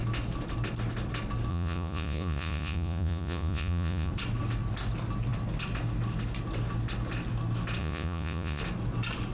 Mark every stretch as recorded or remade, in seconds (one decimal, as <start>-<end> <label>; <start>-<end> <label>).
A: 0.0-1.5 recorded; 1.5-4.1 remade; 4.1-7.8 recorded; 7.8-8.6 remade; 8.6-9.3 recorded